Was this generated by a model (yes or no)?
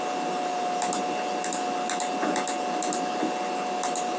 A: no